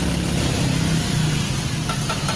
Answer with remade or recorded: recorded